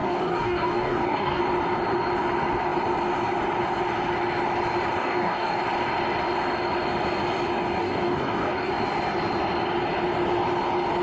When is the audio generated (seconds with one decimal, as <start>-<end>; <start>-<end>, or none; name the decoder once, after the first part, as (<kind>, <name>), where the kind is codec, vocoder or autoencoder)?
0.0-1.4 (codec, DAC); 5.0-5.6; 7.8-8.7